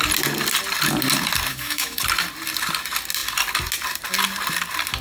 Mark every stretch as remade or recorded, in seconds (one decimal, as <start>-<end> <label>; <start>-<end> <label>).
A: 0.0-1.5 recorded; 1.5-2.0 remade; 2.0-5.0 recorded